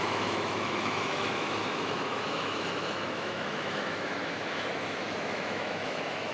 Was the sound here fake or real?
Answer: fake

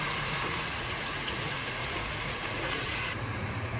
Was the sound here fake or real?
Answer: fake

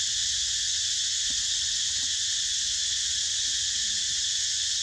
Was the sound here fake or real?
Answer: fake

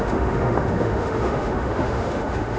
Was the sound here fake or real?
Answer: fake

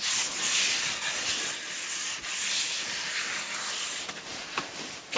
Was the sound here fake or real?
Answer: real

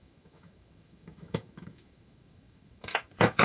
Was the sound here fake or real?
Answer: fake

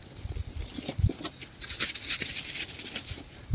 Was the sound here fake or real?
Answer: real